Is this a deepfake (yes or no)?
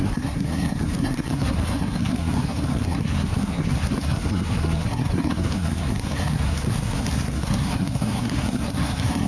yes